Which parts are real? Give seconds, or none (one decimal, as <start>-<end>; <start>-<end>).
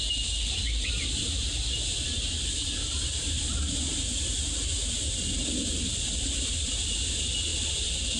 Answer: 0.0-7.5